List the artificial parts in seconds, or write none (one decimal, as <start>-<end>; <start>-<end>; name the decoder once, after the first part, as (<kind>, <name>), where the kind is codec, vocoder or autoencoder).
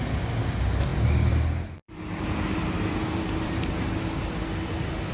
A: 0.9-1.4 (vocoder, BigVGAN v2); 1.8-3.6